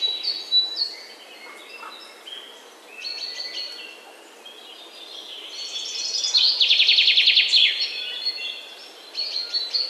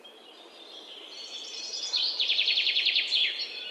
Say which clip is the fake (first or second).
second